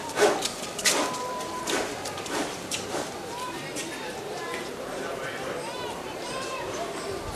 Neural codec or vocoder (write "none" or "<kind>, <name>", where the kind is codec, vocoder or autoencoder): vocoder, BigVGAN v2